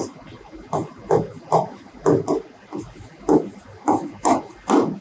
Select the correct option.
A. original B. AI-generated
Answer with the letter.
A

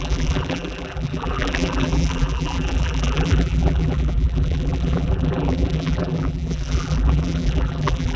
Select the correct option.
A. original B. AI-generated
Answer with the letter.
B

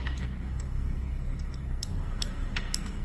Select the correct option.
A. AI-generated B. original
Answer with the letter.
A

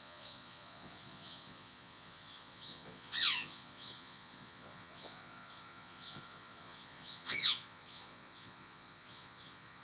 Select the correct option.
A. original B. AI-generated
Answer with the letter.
B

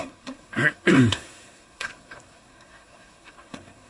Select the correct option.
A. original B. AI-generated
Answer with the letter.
B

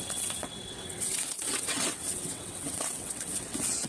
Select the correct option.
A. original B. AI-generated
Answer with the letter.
B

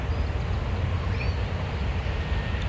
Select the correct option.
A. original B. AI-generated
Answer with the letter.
A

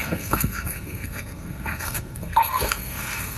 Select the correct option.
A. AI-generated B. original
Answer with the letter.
A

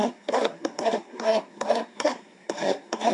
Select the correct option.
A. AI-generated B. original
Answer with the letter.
A